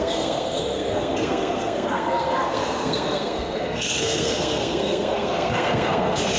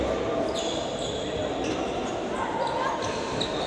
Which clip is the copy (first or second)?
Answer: first